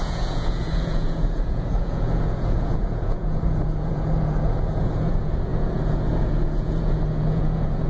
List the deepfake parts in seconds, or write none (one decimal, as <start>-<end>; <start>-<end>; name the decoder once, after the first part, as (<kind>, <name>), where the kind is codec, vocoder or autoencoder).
0.0-7.9 (vocoder, Vocos)